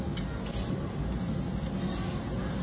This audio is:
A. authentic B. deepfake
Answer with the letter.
A